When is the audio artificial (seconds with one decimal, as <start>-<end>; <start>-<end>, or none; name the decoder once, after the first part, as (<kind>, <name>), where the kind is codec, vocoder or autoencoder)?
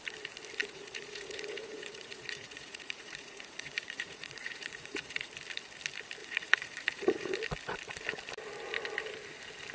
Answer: 0.6-5.3 (vocoder, Vocos); 6.2-7.3